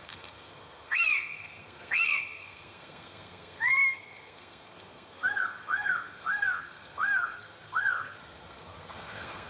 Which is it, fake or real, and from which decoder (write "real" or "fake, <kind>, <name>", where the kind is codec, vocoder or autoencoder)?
fake, codec, SNAC